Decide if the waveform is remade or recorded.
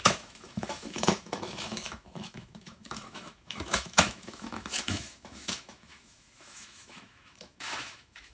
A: remade